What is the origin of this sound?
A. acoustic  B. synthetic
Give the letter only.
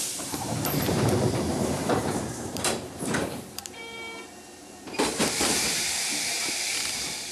B